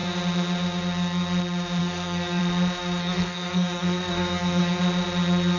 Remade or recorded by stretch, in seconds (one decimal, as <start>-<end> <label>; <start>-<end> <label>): 0.0-1.8 recorded; 1.8-2.4 remade; 2.4-3.0 recorded; 3.0-4.8 remade; 4.8-5.6 recorded